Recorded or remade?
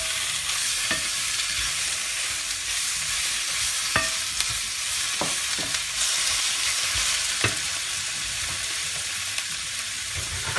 remade